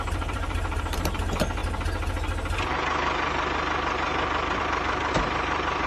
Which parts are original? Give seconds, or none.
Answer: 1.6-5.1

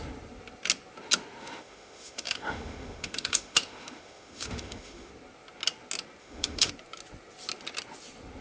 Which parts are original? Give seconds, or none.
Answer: 0.0-1.4; 5.1-6.2; 6.7-8.4